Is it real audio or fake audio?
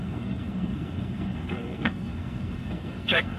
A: fake